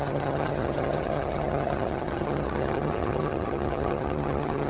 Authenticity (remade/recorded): remade